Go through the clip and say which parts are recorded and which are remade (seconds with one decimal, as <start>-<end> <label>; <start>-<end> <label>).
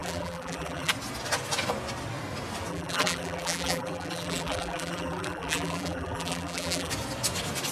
0.0-0.9 remade; 0.9-2.7 recorded; 2.7-6.9 remade; 6.9-7.7 recorded